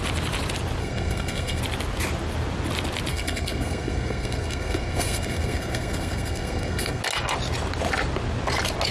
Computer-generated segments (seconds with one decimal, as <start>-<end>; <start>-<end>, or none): 0.8-1.6; 3.1-7.0